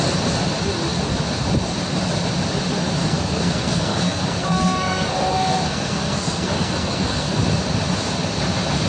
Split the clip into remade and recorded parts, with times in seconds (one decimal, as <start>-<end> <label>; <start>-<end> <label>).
0.0-3.0 recorded; 3.0-7.4 remade; 7.4-8.9 recorded